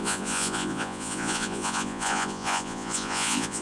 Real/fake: fake